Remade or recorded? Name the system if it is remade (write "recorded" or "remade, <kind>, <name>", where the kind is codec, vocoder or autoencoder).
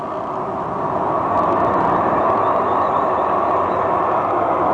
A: recorded